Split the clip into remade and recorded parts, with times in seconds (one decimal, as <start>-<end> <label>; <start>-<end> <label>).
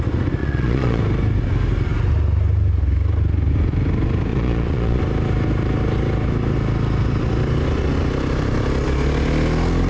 0.0-0.4 recorded; 0.4-1.0 remade; 1.0-4.3 recorded; 4.3-5.0 remade; 5.0-9.9 recorded